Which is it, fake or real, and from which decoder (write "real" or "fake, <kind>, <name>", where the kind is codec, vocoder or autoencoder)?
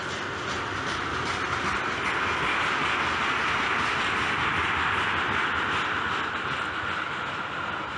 real